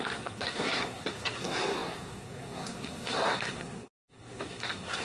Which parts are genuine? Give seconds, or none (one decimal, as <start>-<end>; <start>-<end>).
none